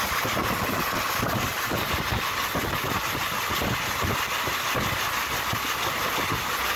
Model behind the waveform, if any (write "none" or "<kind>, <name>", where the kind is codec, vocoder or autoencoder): none